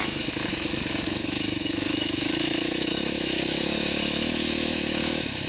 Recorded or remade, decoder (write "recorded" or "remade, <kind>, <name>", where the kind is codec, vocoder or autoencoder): remade, autoencoder, DAC-VAE